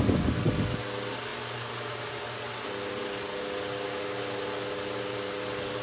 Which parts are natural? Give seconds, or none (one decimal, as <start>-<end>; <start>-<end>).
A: 0.0-5.8

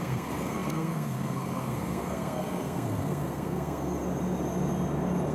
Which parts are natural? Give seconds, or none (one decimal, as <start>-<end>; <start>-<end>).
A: 4.0-5.3

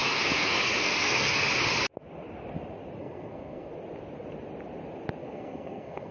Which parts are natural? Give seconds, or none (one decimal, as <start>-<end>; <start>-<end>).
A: 1.5-3.0; 3.7-5.2

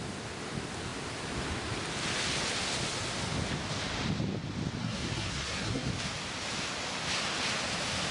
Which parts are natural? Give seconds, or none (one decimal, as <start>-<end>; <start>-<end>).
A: 0.0-4.8; 5.9-8.1

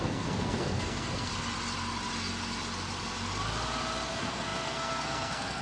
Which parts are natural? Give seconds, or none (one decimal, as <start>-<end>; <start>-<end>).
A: 1.3-4.1

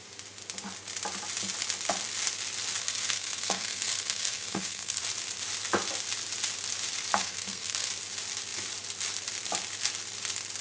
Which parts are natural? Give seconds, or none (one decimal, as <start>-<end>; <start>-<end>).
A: 0.0-2.8; 5.0-7.2; 7.9-10.6